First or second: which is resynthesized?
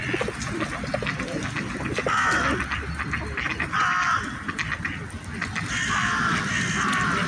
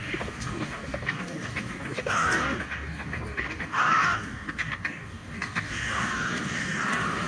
second